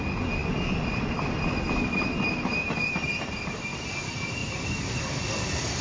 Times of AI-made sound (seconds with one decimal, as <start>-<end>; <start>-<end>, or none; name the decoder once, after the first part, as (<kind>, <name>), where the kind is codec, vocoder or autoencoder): 4.4-5.8 (vocoder, BigVGAN v2)